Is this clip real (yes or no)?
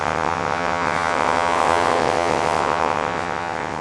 no